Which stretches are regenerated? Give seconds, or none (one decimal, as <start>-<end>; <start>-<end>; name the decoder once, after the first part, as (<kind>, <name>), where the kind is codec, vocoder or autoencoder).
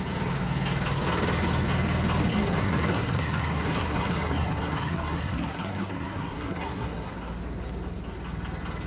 2.3-7.1 (codec, SNAC)